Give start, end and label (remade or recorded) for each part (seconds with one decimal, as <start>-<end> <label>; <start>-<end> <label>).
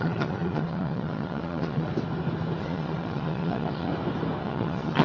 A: 0.0-1.9 remade; 1.9-2.6 recorded; 2.6-3.9 remade; 3.9-4.4 recorded; 4.4-5.0 remade